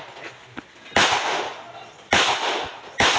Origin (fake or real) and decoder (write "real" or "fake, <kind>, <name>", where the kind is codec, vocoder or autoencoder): real